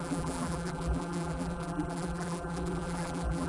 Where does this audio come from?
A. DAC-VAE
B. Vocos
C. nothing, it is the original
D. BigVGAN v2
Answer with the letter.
D